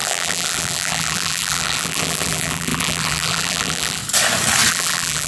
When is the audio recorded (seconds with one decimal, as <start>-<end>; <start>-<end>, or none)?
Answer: 4.0-4.7